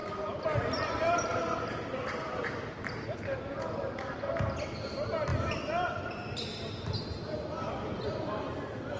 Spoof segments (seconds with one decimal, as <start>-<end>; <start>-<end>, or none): 0.0-3.6